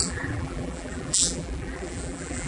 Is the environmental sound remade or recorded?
remade